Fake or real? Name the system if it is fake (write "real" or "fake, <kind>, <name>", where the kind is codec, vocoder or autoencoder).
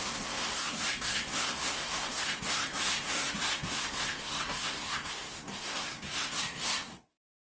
fake, codec, SNAC